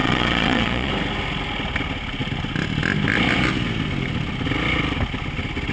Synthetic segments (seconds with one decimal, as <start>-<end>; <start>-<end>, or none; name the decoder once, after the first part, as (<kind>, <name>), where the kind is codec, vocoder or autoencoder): 0.0-0.9 (vocoder, Vocos)